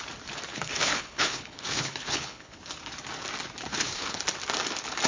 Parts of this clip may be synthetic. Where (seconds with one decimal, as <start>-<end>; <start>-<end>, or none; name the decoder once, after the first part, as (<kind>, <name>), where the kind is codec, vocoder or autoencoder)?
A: 0.5-2.6 (codec, HILCodec); 3.7-4.2